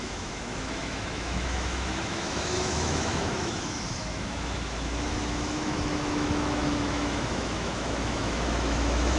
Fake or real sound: fake